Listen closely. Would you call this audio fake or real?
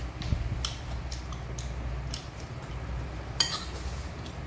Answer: real